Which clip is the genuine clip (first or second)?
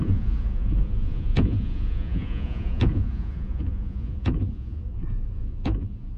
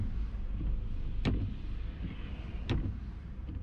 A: second